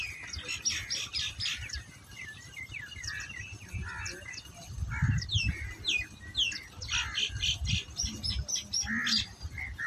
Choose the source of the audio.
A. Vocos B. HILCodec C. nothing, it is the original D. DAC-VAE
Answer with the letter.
C